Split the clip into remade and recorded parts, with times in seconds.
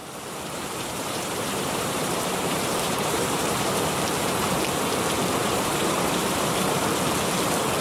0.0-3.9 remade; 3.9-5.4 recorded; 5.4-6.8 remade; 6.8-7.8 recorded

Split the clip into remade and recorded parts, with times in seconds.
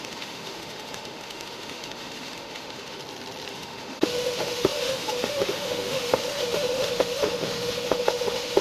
0.0-3.0 remade; 3.0-3.5 recorded; 3.5-8.6 remade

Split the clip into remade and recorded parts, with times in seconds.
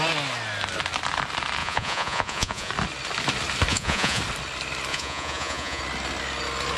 0.0-1.6 recorded; 1.6-2.7 remade; 2.7-3.7 recorded; 3.7-4.2 remade; 4.2-4.9 recorded; 4.9-5.8 remade; 5.8-6.8 recorded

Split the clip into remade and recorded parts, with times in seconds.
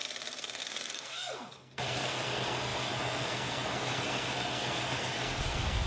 0.0-5.9 remade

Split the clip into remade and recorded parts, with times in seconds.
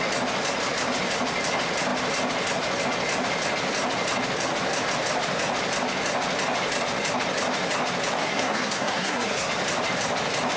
0.0-8.2 recorded; 8.2-9.5 remade; 9.5-10.6 recorded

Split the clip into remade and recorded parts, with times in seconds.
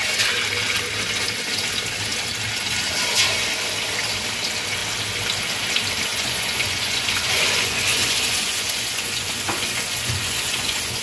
0.0-6.1 recorded; 6.1-11.0 remade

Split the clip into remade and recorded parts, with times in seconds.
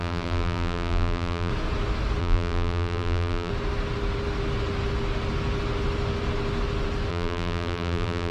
0.0-1.5 remade; 1.5-2.2 recorded; 2.2-3.5 remade; 3.5-7.1 recorded; 7.1-8.3 remade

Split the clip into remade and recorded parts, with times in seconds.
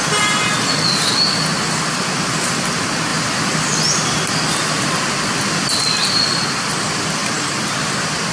0.0-8.3 recorded